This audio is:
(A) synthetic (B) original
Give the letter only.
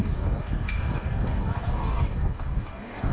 A